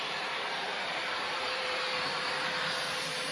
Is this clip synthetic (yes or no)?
yes